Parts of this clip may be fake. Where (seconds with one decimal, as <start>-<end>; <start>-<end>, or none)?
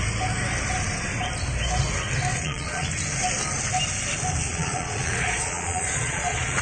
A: 2.3-2.9; 4.5-6.6